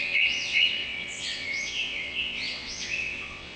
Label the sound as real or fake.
fake